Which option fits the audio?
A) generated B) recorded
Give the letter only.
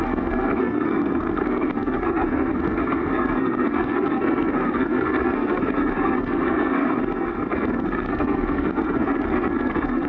A